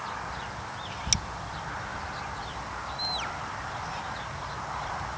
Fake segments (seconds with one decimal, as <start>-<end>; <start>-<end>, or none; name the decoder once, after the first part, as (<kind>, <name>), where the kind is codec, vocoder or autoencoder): none